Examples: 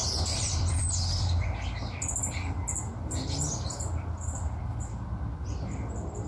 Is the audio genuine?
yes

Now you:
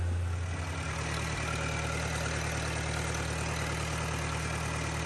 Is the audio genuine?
yes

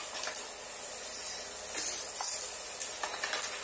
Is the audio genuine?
yes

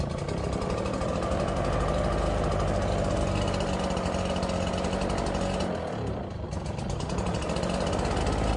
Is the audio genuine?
yes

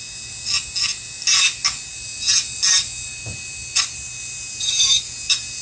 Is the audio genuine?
yes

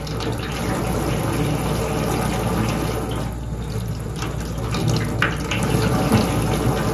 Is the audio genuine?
yes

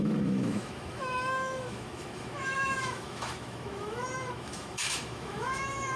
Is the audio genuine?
no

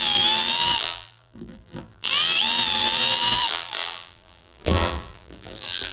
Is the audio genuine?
no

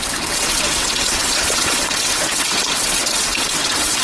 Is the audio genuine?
no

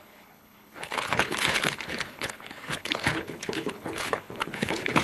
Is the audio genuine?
no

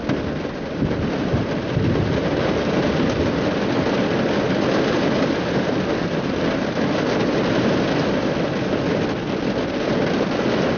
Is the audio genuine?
yes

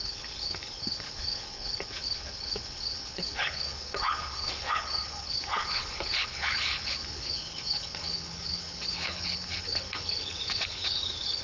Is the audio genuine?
no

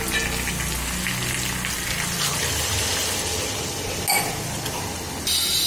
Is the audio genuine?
yes